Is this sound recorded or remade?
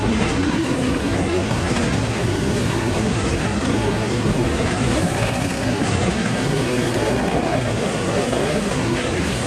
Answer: remade